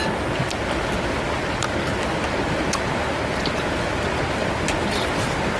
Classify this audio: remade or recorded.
recorded